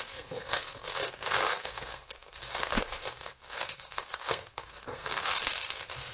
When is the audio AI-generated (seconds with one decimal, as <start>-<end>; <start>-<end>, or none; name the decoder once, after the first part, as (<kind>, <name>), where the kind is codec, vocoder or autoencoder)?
0.0-6.1 (codec, SNAC)